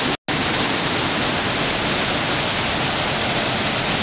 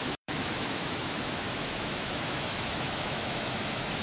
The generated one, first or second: second